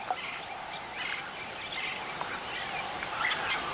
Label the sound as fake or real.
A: real